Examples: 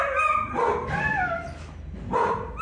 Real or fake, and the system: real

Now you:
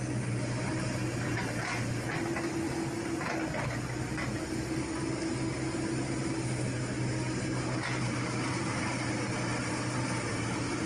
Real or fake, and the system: real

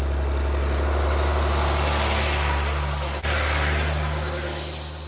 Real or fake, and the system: real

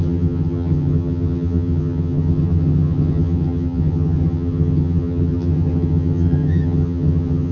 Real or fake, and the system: fake, vocoder, HiFi-GAN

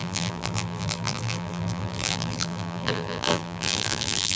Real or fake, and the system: fake, vocoder, BigVGAN v2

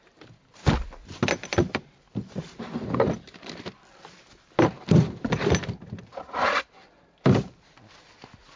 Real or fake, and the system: real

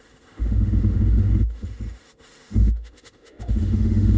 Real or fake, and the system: fake, autoencoder, DAC-VAE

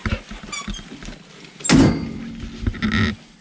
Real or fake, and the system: real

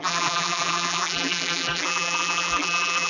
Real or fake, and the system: fake, vocoder, BigVGAN v2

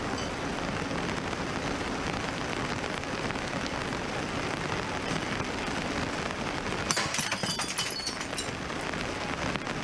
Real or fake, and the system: real